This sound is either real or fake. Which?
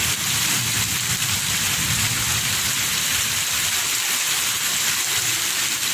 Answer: fake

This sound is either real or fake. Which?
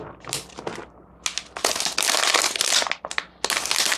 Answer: real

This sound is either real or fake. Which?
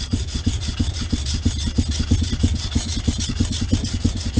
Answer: real